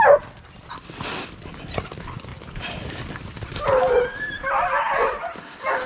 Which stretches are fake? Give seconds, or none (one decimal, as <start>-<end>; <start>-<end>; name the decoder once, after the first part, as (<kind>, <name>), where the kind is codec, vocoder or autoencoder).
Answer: none